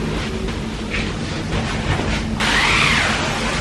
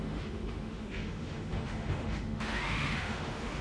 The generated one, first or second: second